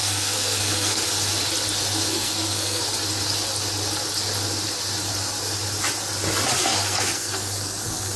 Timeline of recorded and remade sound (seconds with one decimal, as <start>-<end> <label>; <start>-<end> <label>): 0.0-1.0 remade; 1.0-2.1 recorded; 2.1-2.8 remade; 2.8-6.6 recorded; 6.6-8.2 remade